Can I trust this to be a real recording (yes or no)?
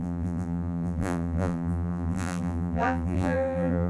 no